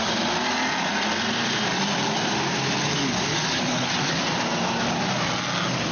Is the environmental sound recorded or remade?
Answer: recorded